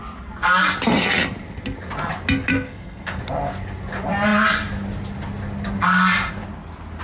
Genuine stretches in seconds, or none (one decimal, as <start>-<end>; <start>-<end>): 0.0-2.5; 3.2-7.0